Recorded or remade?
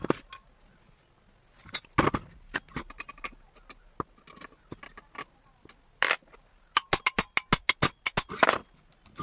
recorded